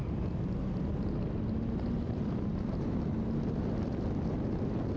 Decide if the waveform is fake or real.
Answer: real